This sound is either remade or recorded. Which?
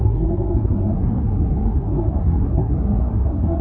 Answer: remade